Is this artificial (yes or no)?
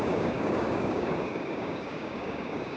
yes